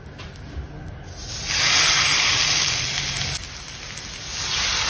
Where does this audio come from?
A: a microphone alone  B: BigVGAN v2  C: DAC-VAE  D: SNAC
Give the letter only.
A